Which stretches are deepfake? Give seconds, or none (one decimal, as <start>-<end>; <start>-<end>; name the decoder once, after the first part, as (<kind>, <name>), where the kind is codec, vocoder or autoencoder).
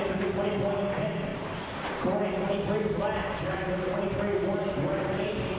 none